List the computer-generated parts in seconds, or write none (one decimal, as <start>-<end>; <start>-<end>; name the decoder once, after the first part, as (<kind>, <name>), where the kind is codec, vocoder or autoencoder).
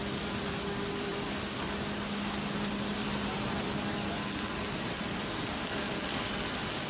none